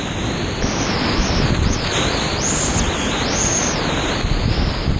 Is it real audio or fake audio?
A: real